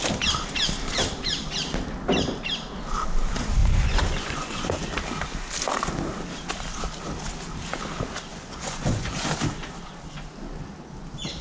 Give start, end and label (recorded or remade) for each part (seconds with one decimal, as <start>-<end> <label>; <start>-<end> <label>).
0.0-3.6 recorded; 3.6-4.8 remade; 4.8-8.3 recorded; 8.3-9.3 remade; 9.3-11.4 recorded